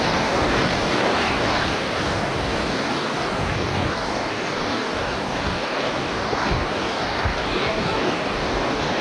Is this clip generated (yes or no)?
yes